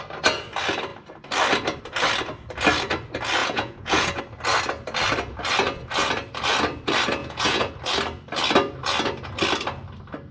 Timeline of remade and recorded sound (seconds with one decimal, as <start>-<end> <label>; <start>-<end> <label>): 0.0-3.4 recorded; 3.4-4.2 remade; 4.2-7.2 recorded; 7.2-7.7 remade; 7.7-10.3 recorded